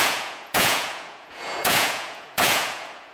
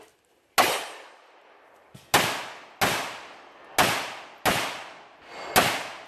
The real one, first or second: second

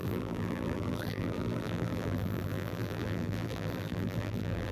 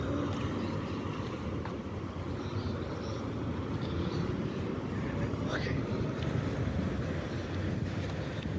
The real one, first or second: second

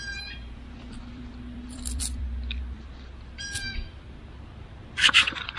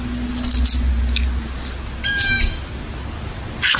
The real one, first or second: second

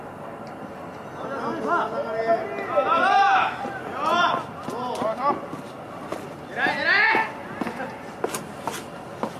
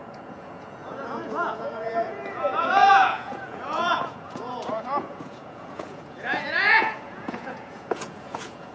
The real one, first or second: first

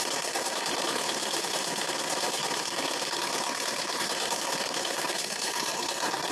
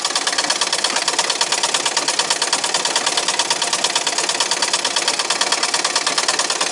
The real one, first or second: second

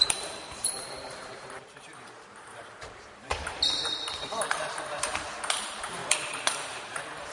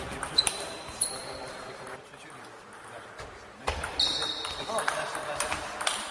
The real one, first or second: second